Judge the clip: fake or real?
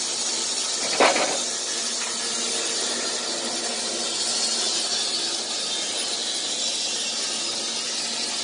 real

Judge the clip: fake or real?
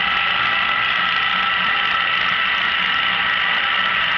real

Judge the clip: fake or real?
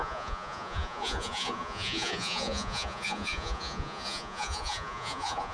fake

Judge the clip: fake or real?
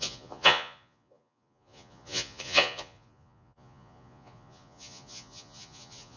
fake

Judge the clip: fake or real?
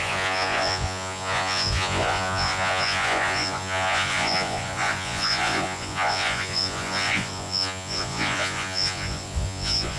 fake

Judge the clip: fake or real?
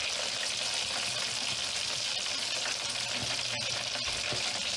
real